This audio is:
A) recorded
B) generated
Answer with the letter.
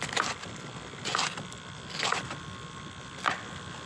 A